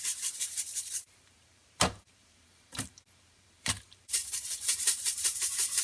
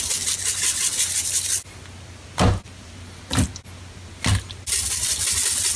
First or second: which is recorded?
second